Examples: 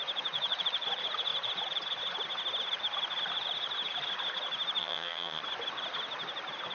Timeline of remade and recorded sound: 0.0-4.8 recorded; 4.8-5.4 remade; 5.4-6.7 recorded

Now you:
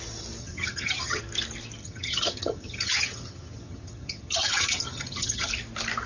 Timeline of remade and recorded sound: 0.0-0.4 recorded; 0.4-1.2 remade; 1.2-1.8 recorded; 1.8-5.5 remade; 5.5-6.1 recorded